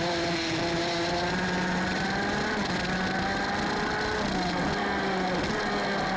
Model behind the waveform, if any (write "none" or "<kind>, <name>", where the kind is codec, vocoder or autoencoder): none